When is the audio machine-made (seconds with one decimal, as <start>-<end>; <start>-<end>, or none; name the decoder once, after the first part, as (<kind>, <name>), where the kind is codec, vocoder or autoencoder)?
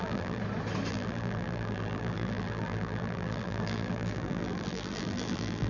0.0-0.4 (vocoder, BigVGAN v2); 0.9-5.7